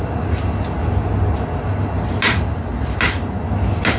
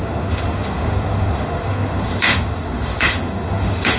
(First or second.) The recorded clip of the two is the first